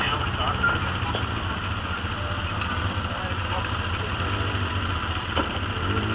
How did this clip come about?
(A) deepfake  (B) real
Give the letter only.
B